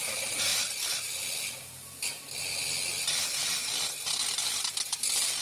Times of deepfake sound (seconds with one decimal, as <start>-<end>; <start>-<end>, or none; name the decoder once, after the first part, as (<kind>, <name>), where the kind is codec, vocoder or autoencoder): none